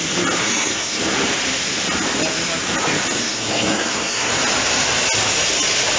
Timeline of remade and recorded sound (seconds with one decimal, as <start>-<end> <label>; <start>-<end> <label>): 0.0-0.4 recorded; 0.4-1.0 remade; 1.0-3.2 recorded; 3.2-4.3 remade; 4.3-6.0 recorded